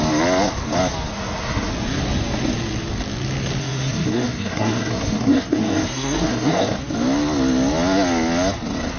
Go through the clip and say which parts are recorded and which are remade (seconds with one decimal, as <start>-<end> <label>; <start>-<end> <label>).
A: 0.0-1.1 recorded; 1.1-1.7 remade; 1.7-3.6 recorded; 3.6-6.8 remade; 6.8-9.0 recorded